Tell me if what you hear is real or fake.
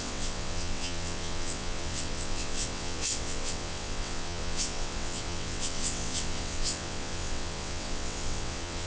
fake